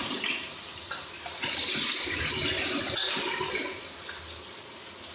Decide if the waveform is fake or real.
real